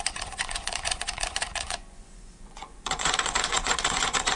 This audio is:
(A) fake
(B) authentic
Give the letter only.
A